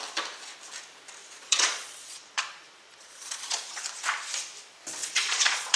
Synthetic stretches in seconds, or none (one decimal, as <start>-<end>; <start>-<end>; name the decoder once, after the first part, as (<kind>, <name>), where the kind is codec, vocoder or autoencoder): 1.2-3.8 (vocoder, Vocos); 5.0-5.8